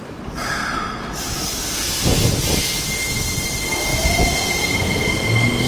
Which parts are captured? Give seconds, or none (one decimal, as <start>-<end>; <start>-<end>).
0.0-3.9; 5.1-5.7

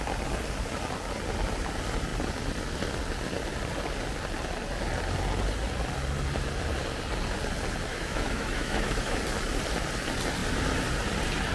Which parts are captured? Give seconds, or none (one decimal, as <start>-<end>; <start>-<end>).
0.0-7.9; 9.2-11.5